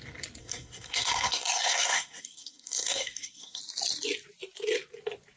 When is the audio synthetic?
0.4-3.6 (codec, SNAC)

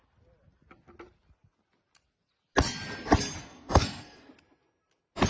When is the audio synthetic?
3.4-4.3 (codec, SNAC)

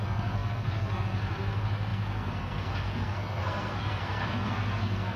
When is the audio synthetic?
0.0-5.2 (codec, SNAC)